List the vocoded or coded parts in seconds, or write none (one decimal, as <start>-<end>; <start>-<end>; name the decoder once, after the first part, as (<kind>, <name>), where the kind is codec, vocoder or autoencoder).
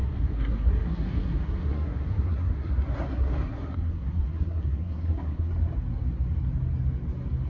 0.0-2.7 (codec, SNAC); 3.1-5.5